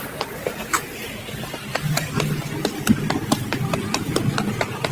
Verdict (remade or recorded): recorded